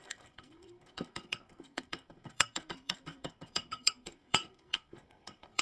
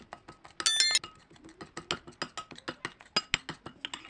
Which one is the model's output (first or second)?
first